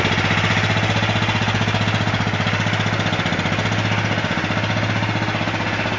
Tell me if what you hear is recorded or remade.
recorded